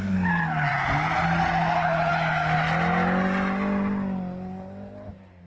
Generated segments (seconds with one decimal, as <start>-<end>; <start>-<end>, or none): none